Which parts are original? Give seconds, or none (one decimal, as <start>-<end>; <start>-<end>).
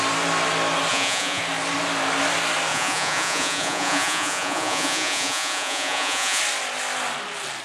0.0-0.9; 1.4-2.7; 6.4-7.6